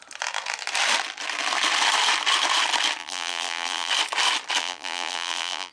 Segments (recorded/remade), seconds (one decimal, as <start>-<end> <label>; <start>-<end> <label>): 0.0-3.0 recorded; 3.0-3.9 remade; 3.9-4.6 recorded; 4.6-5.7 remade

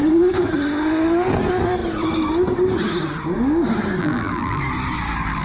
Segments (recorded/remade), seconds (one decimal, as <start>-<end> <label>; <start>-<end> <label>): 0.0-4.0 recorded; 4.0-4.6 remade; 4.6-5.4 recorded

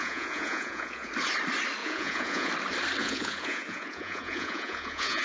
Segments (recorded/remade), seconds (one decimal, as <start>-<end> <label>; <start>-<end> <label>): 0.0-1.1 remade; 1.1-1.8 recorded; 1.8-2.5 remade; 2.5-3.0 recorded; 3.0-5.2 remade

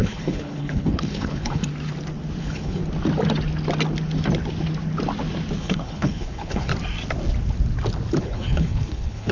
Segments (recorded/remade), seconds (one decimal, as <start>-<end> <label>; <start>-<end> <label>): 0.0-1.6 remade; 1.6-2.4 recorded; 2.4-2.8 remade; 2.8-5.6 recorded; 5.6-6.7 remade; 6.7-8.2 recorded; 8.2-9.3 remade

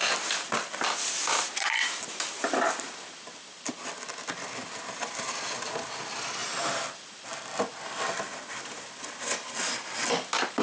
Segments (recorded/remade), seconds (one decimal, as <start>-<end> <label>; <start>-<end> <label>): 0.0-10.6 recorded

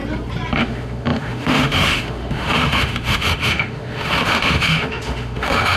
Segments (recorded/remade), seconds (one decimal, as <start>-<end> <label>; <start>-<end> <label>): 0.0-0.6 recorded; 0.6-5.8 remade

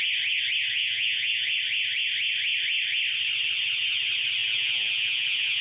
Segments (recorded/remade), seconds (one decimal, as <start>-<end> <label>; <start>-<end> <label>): 0.0-0.7 recorded; 0.7-1.5 remade; 1.5-4.4 recorded; 4.4-5.6 remade

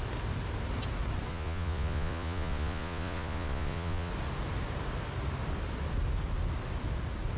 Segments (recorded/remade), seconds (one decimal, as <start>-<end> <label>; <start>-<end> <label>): 0.0-1.3 recorded; 1.3-4.1 remade; 4.1-7.4 recorded